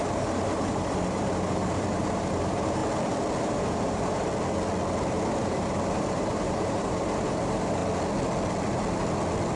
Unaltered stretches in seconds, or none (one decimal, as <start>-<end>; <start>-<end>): 2.8-3.4; 4.3-5.3; 7.8-9.6